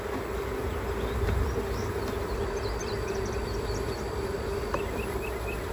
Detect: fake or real real